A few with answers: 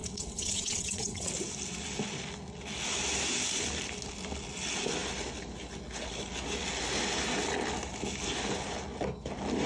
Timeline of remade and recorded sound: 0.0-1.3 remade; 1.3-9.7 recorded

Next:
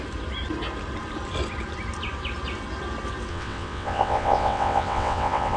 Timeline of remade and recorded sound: 0.0-3.3 recorded; 3.3-5.6 remade

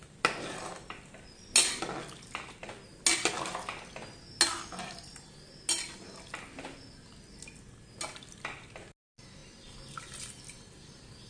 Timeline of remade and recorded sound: 0.0-11.3 recorded

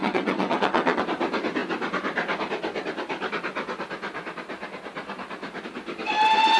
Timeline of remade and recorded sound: 0.0-1.0 remade; 1.0-6.6 recorded